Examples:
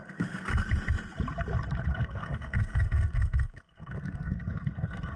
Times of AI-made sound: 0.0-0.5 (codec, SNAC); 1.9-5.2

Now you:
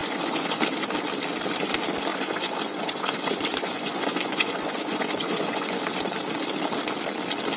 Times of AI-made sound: 0.0-0.6 (vocoder, Vocos); 2.1-5.8

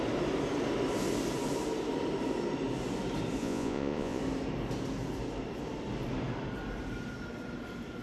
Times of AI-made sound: 3.4-4.2 (vocoder, Vocos)

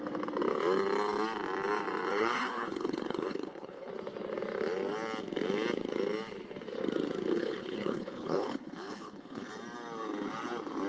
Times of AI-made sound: 2.1-3.9 (codec, HILCodec); 7.3-9.5